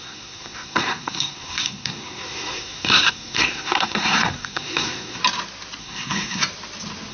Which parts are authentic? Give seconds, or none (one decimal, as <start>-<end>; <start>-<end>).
5.2-5.8; 6.4-7.1